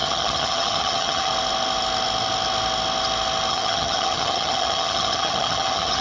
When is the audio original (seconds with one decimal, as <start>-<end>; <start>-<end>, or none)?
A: 1.3-3.5